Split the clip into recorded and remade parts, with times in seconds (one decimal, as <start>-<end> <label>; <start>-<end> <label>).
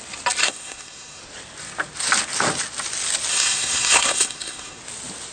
0.0-0.4 recorded; 0.4-1.2 remade; 1.2-3.3 recorded; 3.3-4.8 remade; 4.8-5.3 recorded